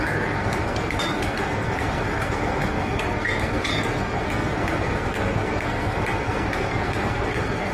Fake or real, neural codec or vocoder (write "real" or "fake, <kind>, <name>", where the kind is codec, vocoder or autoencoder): fake, codec, SNAC